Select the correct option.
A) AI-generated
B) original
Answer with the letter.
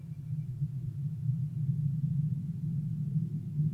B